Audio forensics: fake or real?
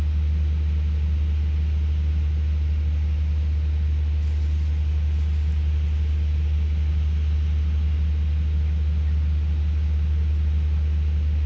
real